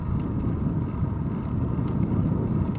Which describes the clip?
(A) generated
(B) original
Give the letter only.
B